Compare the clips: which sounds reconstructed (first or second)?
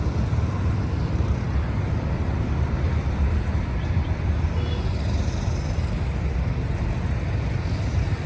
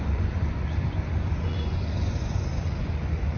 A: second